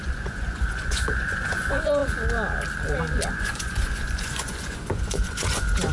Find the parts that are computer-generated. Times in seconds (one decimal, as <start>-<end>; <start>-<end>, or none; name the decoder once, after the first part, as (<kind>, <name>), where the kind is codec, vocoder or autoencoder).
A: 0.0-2.0 (vocoder, Vocos); 3.3-5.9